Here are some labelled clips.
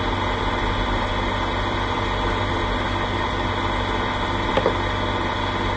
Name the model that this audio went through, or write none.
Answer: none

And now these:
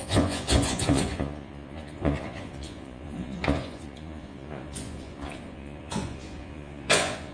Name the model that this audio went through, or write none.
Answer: vocoder, Vocos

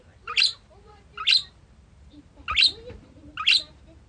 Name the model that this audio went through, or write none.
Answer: none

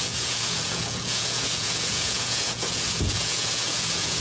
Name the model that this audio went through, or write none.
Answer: vocoder, Vocos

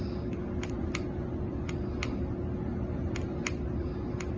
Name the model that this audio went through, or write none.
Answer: none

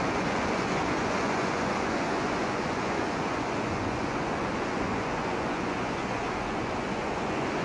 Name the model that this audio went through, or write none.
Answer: vocoder, Vocos